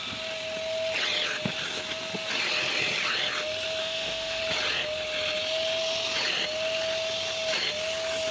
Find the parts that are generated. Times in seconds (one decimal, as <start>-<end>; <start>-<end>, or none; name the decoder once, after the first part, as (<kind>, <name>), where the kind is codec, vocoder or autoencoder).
3.8-4.4 (autoencoder, DAC-VAE)